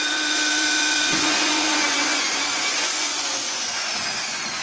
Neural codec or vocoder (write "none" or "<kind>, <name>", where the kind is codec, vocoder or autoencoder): vocoder, Vocos